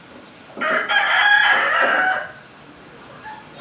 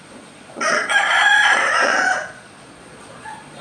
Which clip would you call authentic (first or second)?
first